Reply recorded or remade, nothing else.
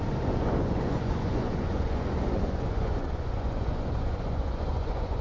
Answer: remade